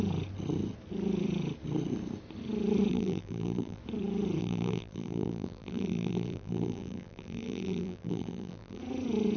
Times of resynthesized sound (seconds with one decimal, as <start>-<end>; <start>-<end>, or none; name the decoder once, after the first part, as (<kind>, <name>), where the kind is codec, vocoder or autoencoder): 2.9-3.8 (vocoder, BigVGAN v2); 4.4-8.8